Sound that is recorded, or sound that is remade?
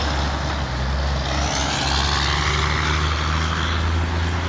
recorded